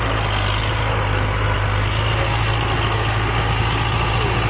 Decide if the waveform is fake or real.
real